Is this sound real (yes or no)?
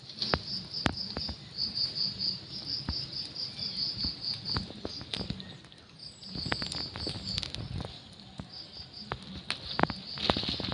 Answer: yes